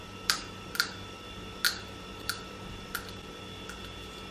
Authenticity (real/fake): real